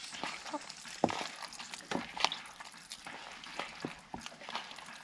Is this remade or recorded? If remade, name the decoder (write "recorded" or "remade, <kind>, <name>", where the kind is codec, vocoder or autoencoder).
recorded